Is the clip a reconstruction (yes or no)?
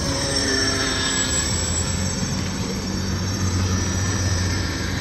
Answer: yes